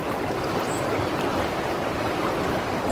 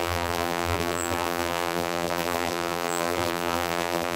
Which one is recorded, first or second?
first